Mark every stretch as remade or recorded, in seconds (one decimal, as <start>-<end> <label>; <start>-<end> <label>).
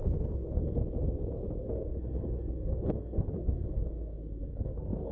0.0-0.8 remade; 0.8-1.6 recorded; 1.6-5.1 remade